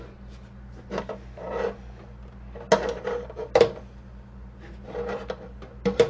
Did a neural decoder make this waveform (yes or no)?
no